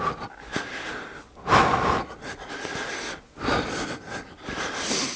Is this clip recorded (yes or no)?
yes